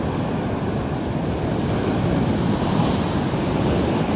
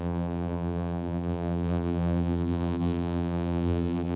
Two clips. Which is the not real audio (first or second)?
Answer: second